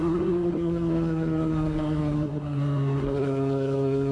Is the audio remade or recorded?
remade